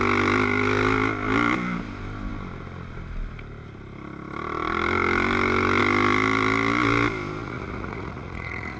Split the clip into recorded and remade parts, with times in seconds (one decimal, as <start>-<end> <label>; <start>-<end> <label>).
0.0-7.4 recorded; 7.4-8.8 remade